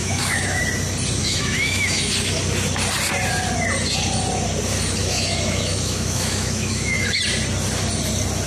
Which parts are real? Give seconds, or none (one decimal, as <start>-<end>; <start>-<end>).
0.6-1.2; 2.1-5.0; 7.2-8.5